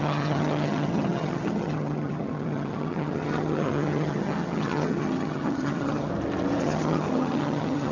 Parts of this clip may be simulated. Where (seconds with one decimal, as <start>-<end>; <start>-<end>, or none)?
0.0-6.1; 6.6-7.9